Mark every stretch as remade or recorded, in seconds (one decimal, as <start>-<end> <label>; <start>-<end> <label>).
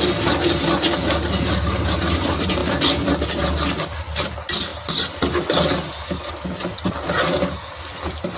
0.0-8.4 recorded